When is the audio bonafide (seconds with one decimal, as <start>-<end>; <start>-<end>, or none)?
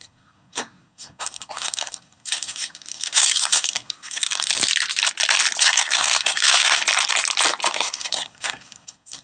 4.5-5.6; 6.8-7.7